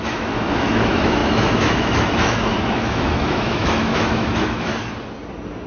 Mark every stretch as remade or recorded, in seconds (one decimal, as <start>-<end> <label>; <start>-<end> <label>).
0.0-4.7 remade; 4.7-5.7 recorded